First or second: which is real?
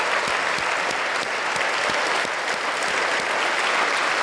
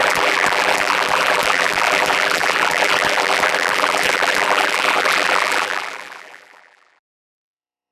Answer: first